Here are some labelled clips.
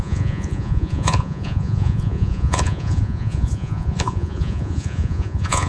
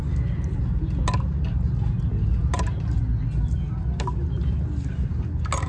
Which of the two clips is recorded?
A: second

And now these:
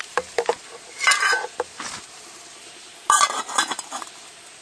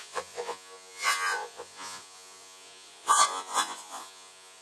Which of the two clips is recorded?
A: first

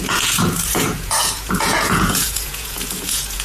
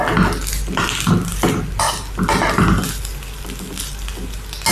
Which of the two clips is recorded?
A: second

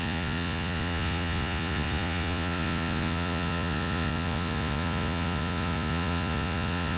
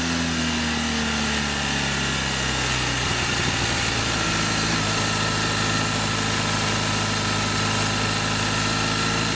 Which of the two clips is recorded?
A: second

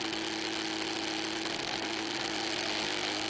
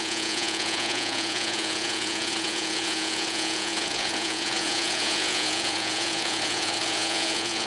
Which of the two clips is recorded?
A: first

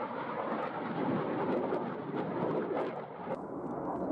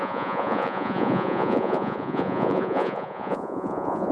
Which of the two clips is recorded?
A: first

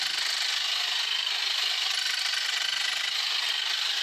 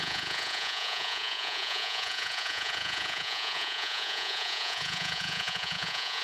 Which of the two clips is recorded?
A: first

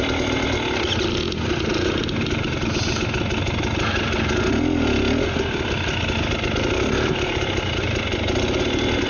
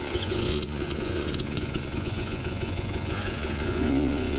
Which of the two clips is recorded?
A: first